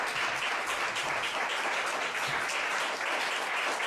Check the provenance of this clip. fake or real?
real